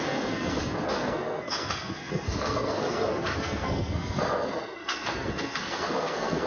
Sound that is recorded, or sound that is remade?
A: remade